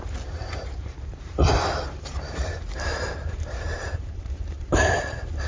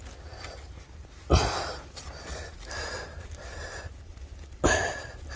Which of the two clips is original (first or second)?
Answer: second